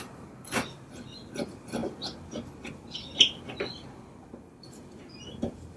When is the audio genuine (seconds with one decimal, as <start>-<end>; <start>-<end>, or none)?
0.0-5.8